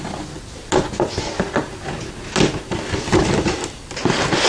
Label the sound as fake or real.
real